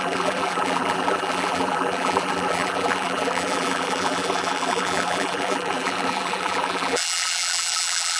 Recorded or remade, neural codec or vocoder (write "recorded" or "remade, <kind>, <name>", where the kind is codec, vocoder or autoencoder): remade, vocoder, BigVGAN v2